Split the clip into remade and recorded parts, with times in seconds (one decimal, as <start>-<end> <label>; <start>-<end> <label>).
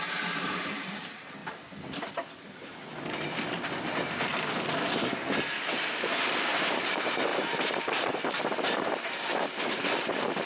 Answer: 0.0-1.4 remade; 1.4-2.0 recorded; 2.0-4.3 remade; 4.3-5.6 recorded; 5.6-10.5 remade